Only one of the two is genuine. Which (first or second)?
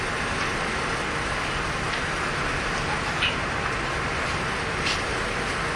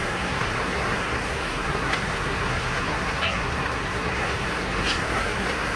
first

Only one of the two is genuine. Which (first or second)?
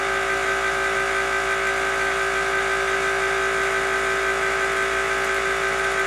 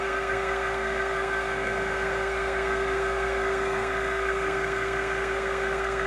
first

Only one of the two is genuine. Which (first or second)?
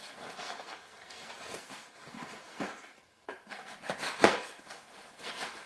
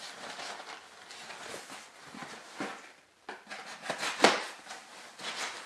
second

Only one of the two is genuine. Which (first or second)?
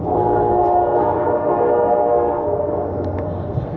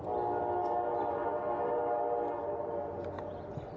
second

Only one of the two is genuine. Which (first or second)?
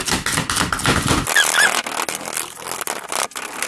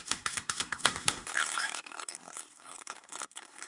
first